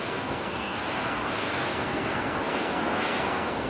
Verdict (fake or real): fake